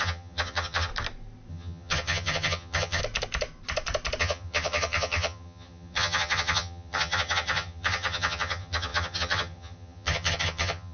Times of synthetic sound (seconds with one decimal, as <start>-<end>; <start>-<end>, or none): 0.0-0.9; 1.5-3.0; 4.2-10.9